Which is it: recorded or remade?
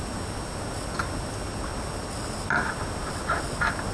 recorded